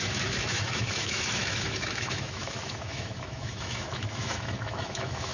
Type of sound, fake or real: fake